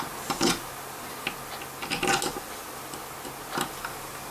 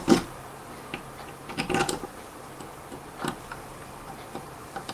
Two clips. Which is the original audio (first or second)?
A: first